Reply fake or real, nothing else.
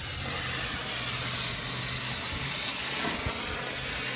real